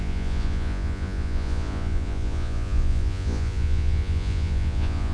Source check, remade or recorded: remade